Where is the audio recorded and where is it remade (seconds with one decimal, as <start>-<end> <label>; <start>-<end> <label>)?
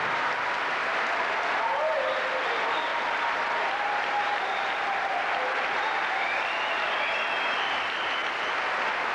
0.0-2.9 recorded; 2.9-7.1 remade; 7.1-8.2 recorded; 8.2-9.1 remade